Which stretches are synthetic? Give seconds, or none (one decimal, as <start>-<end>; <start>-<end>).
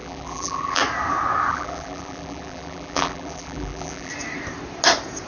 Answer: 0.0-0.8; 1.5-4.1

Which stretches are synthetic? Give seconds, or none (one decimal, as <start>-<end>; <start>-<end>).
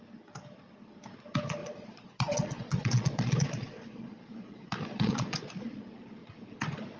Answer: 1.6-5.8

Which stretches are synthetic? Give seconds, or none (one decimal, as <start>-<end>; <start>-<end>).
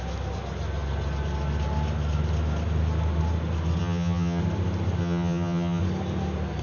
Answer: 3.8-4.4; 5.0-5.8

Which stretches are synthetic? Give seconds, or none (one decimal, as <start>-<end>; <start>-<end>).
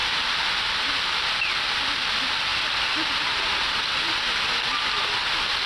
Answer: 0.0-0.5; 2.5-4.8